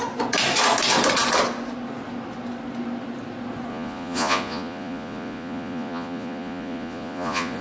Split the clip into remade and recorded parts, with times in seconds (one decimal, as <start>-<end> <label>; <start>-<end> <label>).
0.0-3.7 recorded; 3.7-7.6 remade